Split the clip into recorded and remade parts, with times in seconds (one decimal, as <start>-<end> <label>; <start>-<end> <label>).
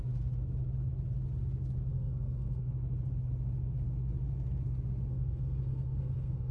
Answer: 0.0-1.9 recorded; 1.9-2.7 remade; 2.7-5.1 recorded; 5.1-6.5 remade